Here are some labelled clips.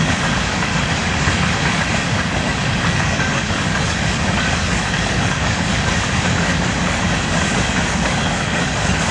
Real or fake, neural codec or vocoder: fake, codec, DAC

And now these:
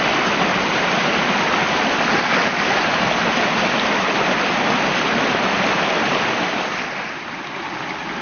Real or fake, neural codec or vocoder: real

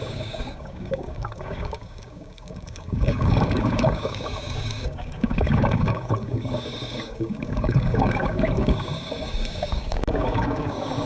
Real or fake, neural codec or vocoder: fake, codec, DAC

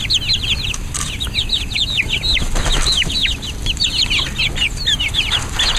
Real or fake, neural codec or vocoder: real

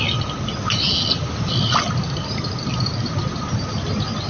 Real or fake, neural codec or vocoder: real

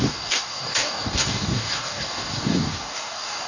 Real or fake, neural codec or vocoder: fake, codec, DAC